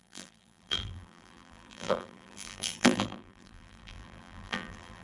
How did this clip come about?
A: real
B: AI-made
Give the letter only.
B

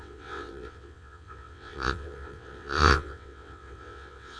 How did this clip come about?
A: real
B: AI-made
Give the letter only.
B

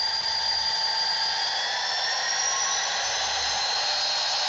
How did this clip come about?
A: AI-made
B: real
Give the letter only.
B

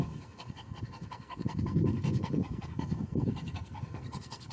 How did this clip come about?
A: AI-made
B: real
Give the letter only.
A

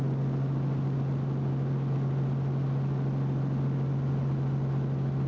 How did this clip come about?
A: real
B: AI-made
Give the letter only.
A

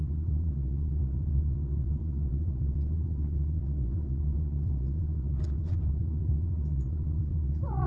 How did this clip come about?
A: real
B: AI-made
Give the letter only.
B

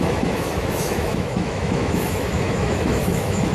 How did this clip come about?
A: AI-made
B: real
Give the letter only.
A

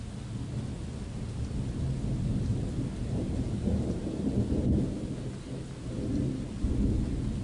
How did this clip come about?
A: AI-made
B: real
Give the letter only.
B